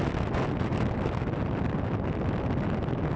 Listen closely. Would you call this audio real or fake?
real